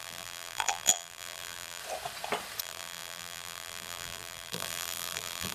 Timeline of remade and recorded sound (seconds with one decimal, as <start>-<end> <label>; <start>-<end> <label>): 0.0-1.8 remade; 1.8-2.6 recorded; 2.6-5.5 remade

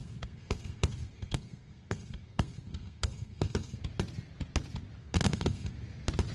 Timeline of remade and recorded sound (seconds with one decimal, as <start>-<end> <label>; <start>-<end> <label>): 0.0-3.8 remade; 3.8-5.0 recorded; 5.0-5.7 remade; 5.7-6.3 recorded